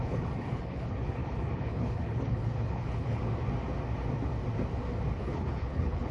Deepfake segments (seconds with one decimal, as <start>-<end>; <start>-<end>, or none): 0.0-3.2; 5.2-6.1